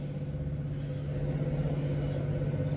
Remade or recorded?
recorded